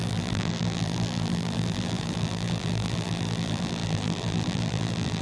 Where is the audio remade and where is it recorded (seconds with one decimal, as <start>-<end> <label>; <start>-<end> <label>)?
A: 0.0-5.2 remade